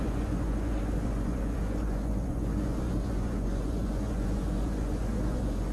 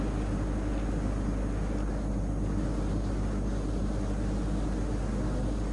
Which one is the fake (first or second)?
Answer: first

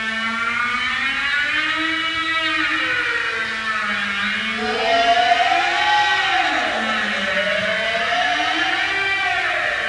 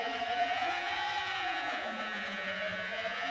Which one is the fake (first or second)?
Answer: second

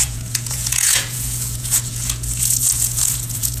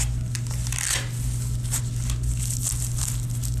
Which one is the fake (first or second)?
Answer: first